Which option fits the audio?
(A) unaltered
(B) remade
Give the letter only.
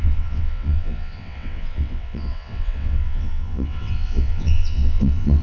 B